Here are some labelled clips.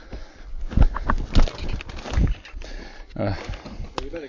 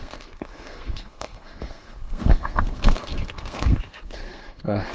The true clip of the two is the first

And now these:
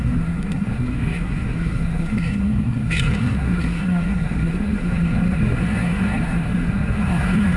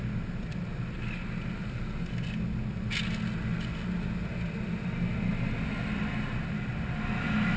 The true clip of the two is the second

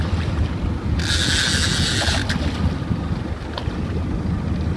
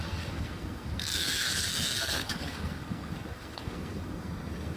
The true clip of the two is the first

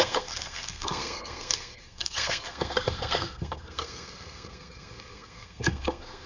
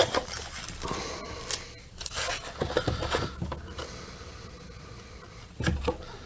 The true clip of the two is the second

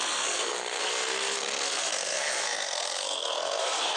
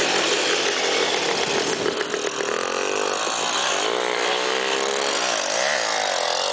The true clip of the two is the second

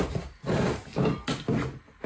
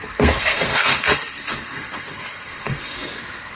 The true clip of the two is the first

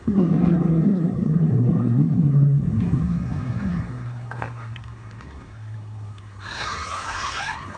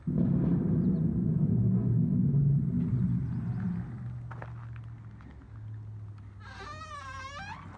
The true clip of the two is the second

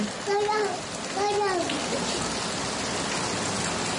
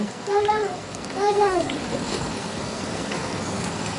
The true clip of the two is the first